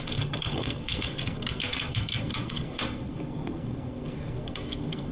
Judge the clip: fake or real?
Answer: fake